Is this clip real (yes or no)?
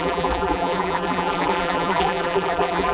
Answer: no